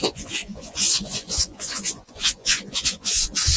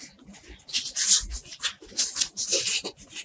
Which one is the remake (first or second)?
first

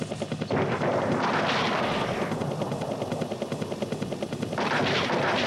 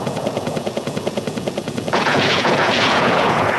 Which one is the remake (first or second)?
second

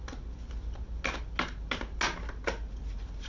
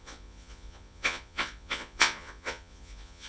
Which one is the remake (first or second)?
second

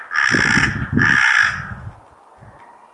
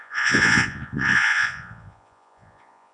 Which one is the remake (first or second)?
second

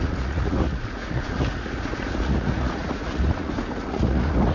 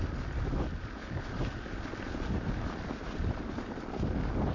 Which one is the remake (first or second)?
first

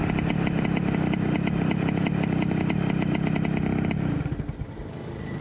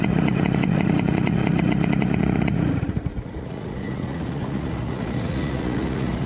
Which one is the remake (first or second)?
second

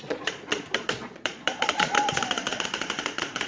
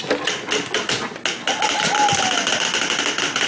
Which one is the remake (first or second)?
first